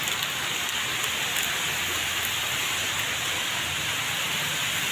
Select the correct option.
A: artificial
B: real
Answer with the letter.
B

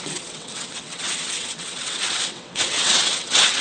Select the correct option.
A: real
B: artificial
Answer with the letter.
B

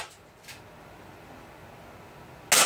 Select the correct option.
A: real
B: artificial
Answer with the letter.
A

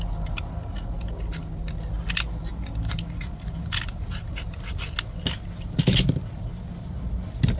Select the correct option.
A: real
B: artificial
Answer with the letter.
A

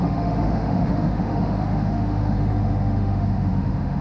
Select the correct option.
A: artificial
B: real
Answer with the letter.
A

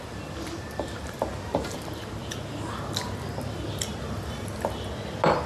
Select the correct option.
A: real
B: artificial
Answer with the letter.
A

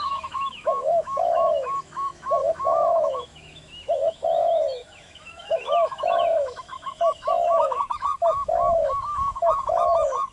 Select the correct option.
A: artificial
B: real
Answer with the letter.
A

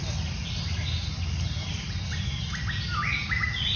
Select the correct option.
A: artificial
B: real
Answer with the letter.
B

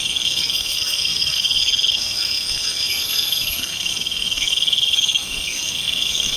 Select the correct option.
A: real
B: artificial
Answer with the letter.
B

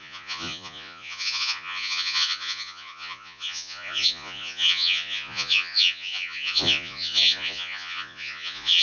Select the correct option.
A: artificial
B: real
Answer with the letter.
A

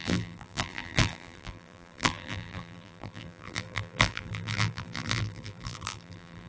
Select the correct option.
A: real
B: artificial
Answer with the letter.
B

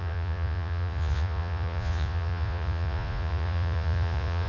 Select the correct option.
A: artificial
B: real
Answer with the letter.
A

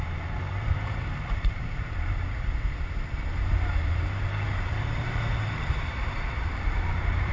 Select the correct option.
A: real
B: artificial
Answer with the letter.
B